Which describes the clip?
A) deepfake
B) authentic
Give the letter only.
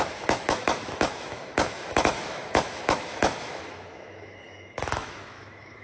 A